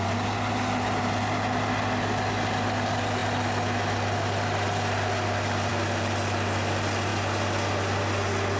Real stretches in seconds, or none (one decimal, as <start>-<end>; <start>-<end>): 0.0-8.6